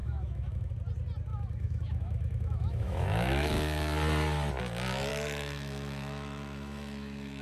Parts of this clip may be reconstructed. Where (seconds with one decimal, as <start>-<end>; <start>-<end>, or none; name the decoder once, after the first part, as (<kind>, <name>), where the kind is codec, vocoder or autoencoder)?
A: 0.0-0.7 (autoencoder, DAC-VAE); 1.3-3.5; 5.1-7.4